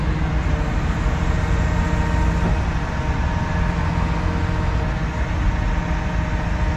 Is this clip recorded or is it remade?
recorded